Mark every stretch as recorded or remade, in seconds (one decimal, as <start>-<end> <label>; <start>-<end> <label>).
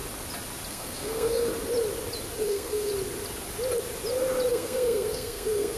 0.0-0.7 recorded; 0.7-1.5 remade; 1.5-2.4 recorded; 2.4-2.9 remade; 2.9-4.5 recorded; 4.5-5.8 remade